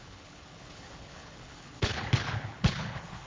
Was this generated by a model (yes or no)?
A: yes